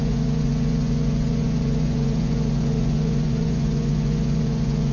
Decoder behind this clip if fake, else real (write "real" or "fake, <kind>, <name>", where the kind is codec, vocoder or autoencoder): fake, vocoder, Vocos